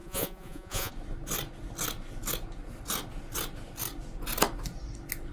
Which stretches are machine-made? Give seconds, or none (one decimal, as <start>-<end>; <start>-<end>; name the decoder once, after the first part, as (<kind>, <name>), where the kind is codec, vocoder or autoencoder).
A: 0.0-0.9 (vocoder, Vocos)